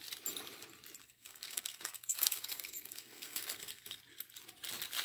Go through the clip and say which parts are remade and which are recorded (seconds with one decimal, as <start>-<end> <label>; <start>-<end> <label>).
0.0-1.0 recorded; 1.0-4.0 remade; 4.0-5.0 recorded